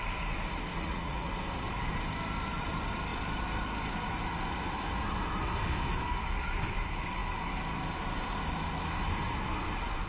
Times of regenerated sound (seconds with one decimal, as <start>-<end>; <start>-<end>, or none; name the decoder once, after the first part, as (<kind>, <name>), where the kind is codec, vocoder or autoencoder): 0.7-1.3 (vocoder, Vocos)